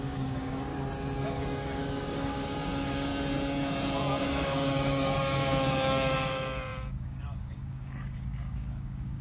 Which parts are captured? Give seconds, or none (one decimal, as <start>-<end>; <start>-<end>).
0.7-1.2; 3.1-4.2